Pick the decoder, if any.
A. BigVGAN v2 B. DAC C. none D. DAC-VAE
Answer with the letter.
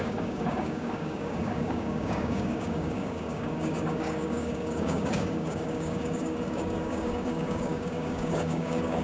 B